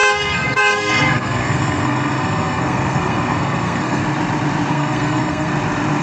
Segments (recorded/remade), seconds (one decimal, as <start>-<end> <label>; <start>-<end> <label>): 0.0-4.0 remade; 4.0-4.7 recorded; 4.7-5.5 remade; 5.5-6.0 recorded

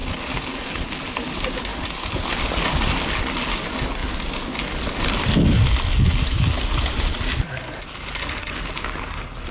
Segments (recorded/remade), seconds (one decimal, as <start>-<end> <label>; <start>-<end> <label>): 0.0-0.5 remade; 0.5-9.5 recorded

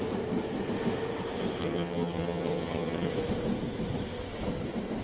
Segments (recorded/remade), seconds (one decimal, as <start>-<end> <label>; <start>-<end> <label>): 0.0-1.6 recorded; 1.6-3.1 remade; 3.1-5.0 recorded

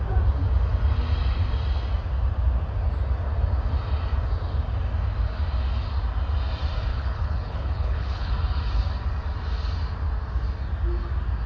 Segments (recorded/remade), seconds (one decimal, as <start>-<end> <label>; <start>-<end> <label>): 0.0-6.9 recorded; 6.9-8.3 remade; 8.3-11.5 recorded

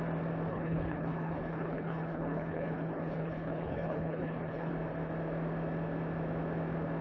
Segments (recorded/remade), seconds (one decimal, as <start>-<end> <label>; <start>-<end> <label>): 0.0-0.5 recorded; 0.5-4.7 remade; 4.7-7.0 recorded

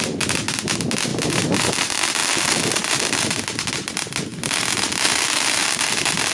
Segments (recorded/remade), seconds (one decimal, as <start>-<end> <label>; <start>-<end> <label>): 0.0-6.3 recorded

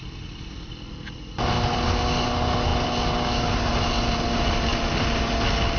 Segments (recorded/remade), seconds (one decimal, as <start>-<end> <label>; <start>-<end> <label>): 0.0-5.8 recorded